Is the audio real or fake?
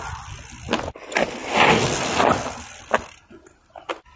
real